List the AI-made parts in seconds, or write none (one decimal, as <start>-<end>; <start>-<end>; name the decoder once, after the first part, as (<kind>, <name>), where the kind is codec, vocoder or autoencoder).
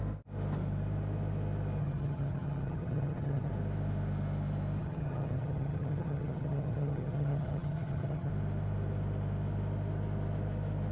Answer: 1.8-3.5 (vocoder, HiFi-GAN); 4.8-8.3